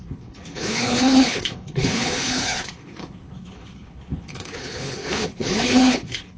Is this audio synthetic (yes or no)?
yes